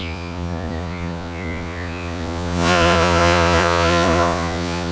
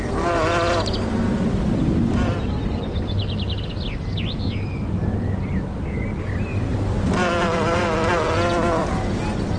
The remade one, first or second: first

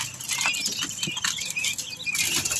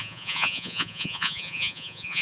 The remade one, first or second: second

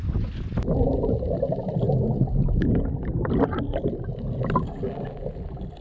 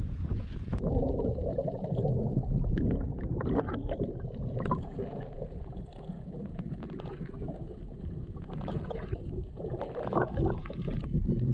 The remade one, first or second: second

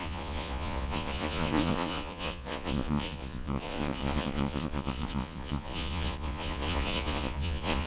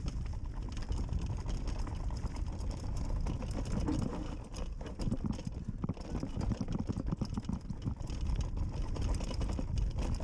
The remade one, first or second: first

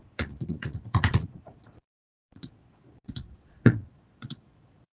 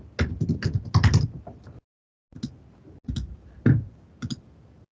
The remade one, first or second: first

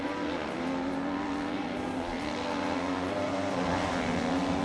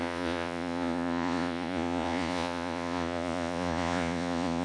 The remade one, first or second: second